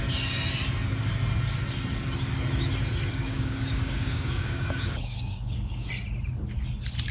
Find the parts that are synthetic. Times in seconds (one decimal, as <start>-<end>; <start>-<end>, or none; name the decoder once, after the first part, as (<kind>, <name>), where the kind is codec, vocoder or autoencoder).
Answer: 3.1-5.9 (codec, DAC)